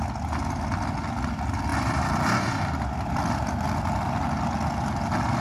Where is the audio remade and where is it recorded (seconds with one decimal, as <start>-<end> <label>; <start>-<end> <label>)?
0.0-1.7 recorded; 1.7-3.2 remade; 3.2-5.4 recorded